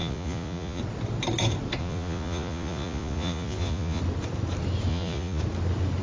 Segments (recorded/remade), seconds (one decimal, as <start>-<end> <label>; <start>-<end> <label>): 0.0-0.8 remade; 0.8-1.8 recorded; 1.8-4.0 remade; 4.0-4.9 recorded; 4.9-5.4 remade; 5.4-6.0 recorded